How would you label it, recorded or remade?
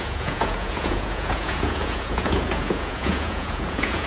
remade